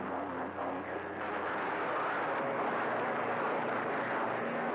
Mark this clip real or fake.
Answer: real